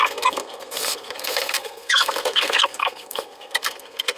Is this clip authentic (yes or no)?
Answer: no